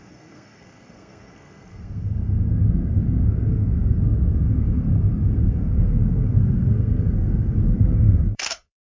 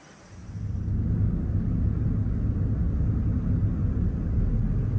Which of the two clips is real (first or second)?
second